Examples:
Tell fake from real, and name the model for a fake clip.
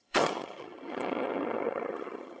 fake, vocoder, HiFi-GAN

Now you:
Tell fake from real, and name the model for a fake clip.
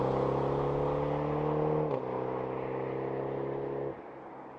real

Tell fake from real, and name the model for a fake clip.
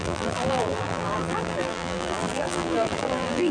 fake, vocoder, BigVGAN v2